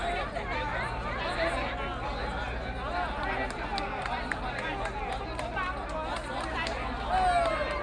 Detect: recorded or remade recorded